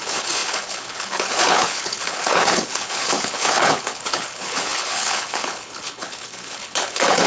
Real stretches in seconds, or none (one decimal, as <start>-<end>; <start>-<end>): none